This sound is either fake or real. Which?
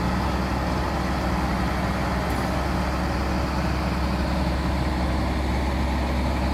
real